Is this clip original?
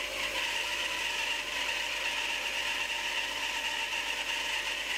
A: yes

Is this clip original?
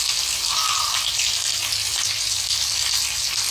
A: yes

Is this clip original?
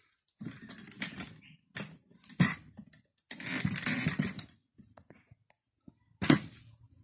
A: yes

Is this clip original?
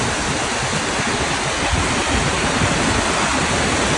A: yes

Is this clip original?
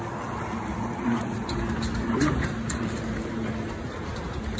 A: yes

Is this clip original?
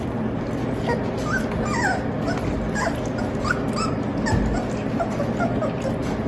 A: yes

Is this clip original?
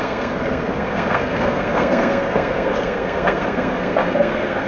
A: no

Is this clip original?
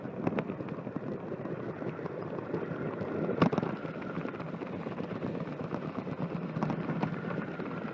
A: yes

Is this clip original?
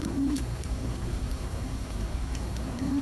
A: no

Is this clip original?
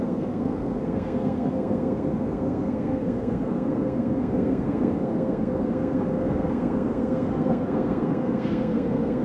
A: no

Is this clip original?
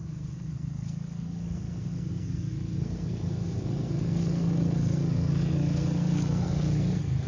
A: no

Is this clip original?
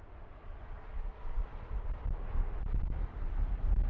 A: yes